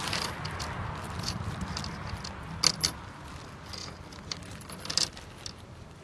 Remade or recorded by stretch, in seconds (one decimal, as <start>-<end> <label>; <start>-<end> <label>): 0.0-6.0 recorded